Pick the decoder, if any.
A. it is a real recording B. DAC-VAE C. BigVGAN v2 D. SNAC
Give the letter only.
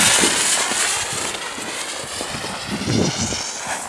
A